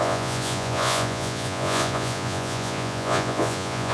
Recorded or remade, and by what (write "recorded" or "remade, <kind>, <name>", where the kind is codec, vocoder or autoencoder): remade, vocoder, Vocos